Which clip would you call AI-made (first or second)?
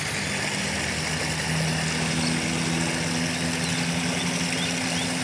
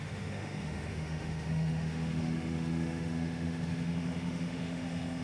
second